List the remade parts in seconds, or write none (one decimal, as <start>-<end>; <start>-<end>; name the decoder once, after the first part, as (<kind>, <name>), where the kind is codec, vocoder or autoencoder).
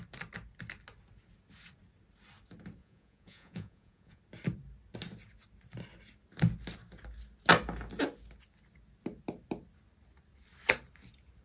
2.8-4.2 (vocoder, Vocos)